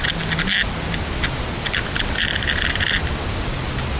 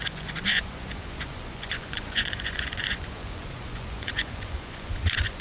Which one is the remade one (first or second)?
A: second